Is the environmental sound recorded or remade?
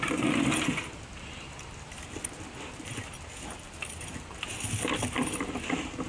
recorded